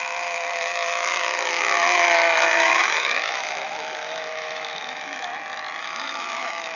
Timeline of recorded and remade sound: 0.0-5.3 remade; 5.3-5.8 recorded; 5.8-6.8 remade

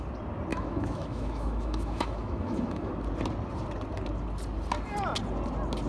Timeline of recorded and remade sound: 0.0-0.5 recorded; 0.5-2.9 remade; 2.9-5.9 recorded

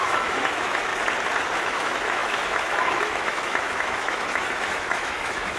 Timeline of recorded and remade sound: 0.0-0.9 remade; 0.9-1.6 recorded; 1.6-5.6 remade

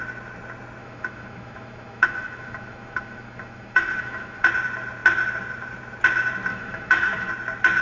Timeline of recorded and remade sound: 0.0-0.8 recorded; 0.8-4.5 remade; 4.5-6.5 recorded; 6.5-7.3 remade; 7.3-7.8 recorded

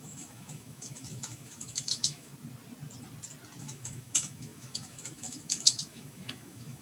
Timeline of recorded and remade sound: 0.0-2.3 remade; 2.3-3.6 recorded; 3.6-6.8 remade

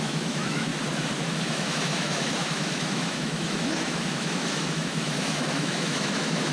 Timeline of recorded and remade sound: 0.0-0.7 remade; 0.7-1.5 recorded; 1.5-6.5 remade

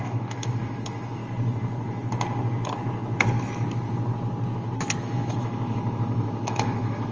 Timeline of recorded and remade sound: 0.0-1.2 remade; 1.2-5.0 recorded; 5.0-7.1 remade